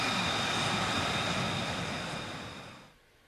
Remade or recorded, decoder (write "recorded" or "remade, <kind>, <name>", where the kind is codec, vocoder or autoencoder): recorded